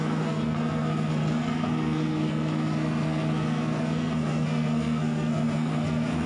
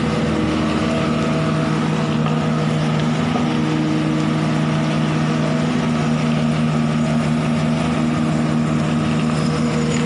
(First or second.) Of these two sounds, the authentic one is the second